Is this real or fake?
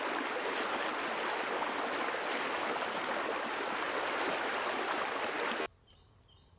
real